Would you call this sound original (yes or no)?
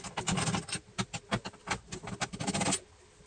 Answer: yes